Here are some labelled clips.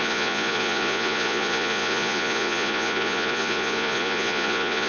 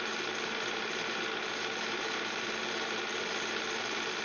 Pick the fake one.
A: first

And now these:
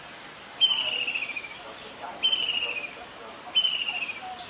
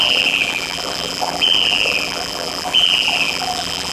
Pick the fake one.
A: second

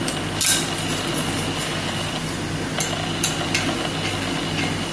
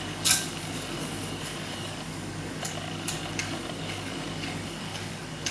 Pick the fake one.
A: second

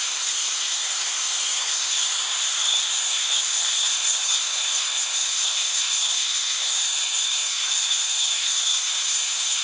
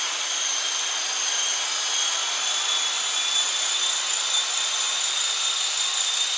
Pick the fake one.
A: first